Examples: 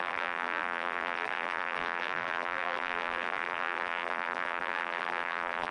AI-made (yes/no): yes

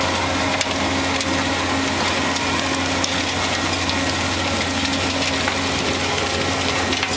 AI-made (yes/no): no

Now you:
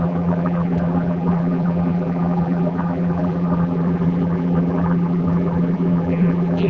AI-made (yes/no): yes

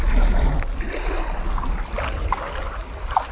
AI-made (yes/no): no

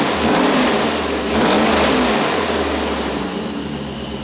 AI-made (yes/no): no